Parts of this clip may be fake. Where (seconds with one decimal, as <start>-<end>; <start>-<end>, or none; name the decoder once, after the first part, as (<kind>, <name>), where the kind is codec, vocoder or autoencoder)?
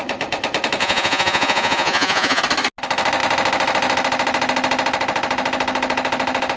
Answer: 0.8-2.4 (vocoder, Vocos)